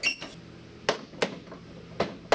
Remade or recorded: recorded